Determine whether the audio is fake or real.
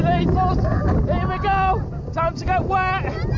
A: real